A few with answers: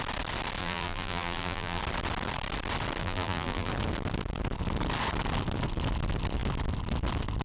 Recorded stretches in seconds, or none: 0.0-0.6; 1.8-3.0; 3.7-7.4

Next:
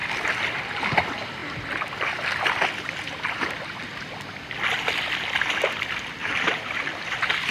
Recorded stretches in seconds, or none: 0.0-6.2; 6.9-7.5

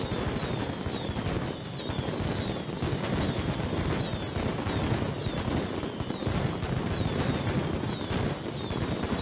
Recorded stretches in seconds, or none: 0.0-9.2

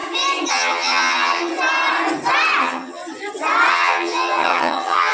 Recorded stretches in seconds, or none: 0.0-0.5; 1.5-2.6; 3.0-3.7

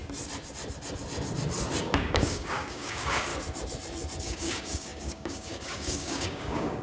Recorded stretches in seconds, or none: 0.0-1.8; 3.3-4.2

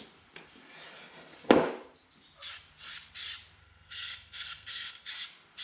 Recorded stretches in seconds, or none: 0.0-3.6; 5.1-5.6